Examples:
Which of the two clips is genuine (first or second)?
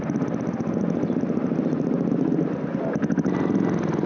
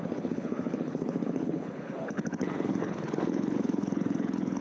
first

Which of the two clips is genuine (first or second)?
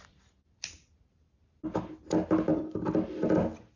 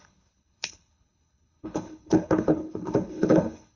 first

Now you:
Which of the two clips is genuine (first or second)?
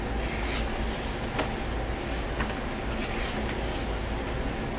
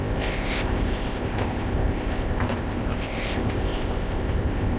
first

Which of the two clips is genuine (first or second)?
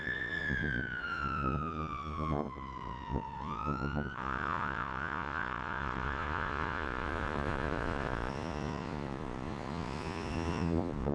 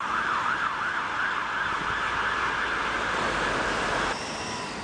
second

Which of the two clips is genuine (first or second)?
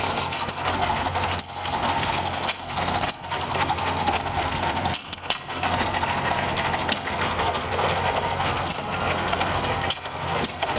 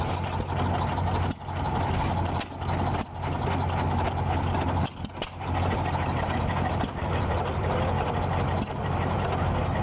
second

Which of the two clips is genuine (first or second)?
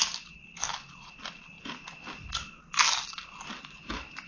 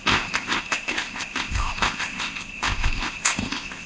first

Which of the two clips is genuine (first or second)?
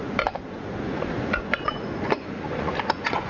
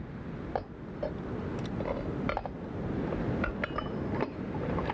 second